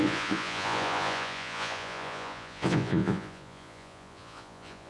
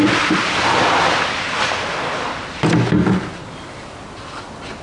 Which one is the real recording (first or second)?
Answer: second